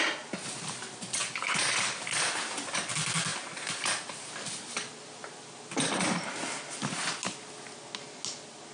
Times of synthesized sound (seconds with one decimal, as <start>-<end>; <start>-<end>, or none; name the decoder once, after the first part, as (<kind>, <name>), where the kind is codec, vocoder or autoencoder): none